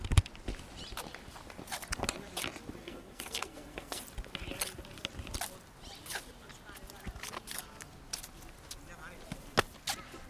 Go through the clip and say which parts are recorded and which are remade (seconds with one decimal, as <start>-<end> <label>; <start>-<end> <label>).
0.0-2.8 recorded; 2.8-4.0 remade; 4.0-10.3 recorded